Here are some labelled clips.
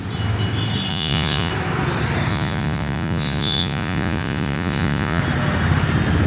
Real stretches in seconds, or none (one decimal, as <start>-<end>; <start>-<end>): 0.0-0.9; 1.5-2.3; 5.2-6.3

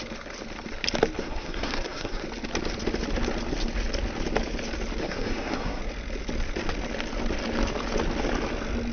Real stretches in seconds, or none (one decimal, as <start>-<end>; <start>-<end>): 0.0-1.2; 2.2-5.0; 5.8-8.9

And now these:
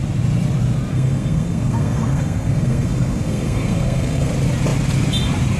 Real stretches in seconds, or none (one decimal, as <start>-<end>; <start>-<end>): 0.0-0.9; 4.3-5.6

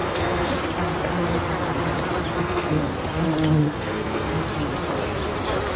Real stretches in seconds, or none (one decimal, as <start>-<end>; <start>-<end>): 0.5-2.3; 2.9-3.6; 4.4-5.8

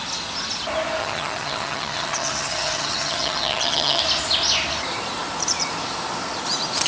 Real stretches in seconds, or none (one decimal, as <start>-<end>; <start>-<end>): 0.0-1.0; 4.0-6.9